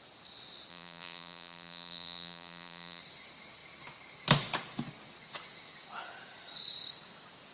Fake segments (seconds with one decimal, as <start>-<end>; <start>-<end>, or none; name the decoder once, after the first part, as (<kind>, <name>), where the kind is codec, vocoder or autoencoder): 0.7-3.0 (vocoder, BigVGAN v2)